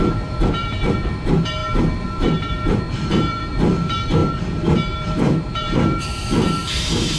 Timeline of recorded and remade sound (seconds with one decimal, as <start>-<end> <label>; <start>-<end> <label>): 0.0-7.2 remade